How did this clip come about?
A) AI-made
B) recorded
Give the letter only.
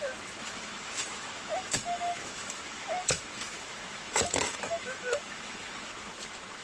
A